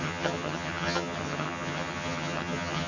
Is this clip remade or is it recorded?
remade